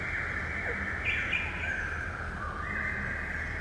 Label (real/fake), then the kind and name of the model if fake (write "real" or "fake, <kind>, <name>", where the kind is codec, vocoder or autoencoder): real